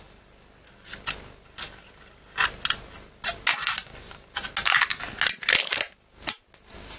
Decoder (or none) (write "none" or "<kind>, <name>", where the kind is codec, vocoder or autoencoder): none